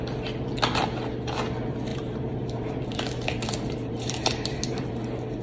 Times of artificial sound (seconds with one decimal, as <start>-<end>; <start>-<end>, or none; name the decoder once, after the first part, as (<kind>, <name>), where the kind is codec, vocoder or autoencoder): 1.9-4.9 (vocoder, BigVGAN v2)